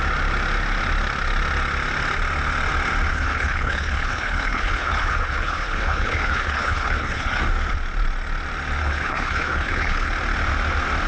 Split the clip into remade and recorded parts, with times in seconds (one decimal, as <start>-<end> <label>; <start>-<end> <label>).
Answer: 0.0-3.1 recorded; 3.1-7.4 remade; 7.4-8.8 recorded; 8.8-10.1 remade; 10.1-11.1 recorded